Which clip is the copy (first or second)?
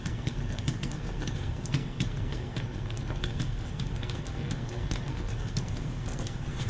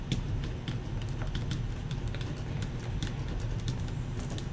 first